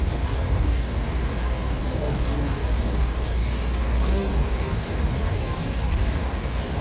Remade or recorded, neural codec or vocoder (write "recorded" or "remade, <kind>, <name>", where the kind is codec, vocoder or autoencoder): remade, codec, DAC